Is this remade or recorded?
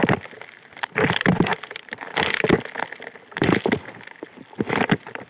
recorded